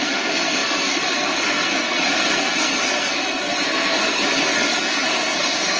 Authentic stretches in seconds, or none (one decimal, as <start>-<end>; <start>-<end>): none